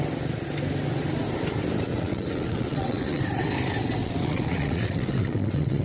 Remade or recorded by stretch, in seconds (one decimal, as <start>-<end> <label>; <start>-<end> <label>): 0.0-1.9 recorded; 1.9-3.2 remade; 3.2-4.0 recorded; 4.0-5.8 remade